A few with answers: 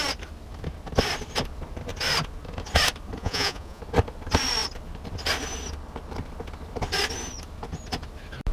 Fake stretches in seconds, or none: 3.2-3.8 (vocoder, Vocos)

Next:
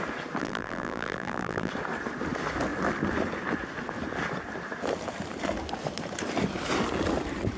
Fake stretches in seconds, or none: 0.4-1.7 (vocoder, BigVGAN v2)

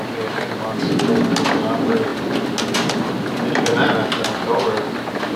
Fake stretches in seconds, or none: none

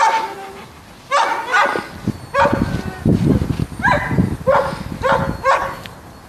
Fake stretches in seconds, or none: none

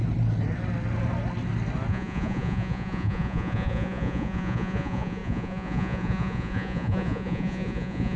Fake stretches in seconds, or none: 1.9-8.2 (vocoder, Vocos)

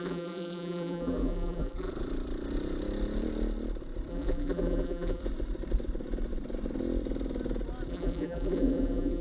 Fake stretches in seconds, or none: 0.0-1.9 (vocoder, BigVGAN v2); 4.1-5.2; 7.9-9.2